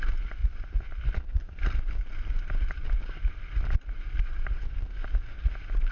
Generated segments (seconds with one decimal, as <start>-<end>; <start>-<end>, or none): none

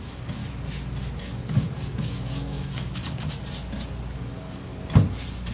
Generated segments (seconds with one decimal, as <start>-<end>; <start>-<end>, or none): 0.0-0.4; 1.2-3.0; 4.1-4.7

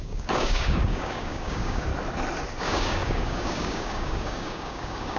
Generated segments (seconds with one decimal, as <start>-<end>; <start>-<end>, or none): 0.0-1.9; 2.6-5.2

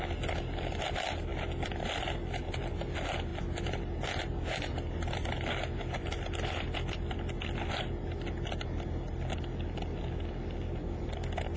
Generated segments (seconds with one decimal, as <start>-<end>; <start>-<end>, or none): none

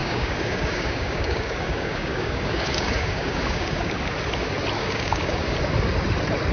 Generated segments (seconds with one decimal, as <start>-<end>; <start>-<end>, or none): 0.0-3.9; 4.8-5.6

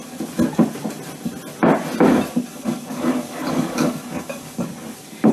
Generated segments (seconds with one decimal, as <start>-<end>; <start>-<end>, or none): 2.5-4.6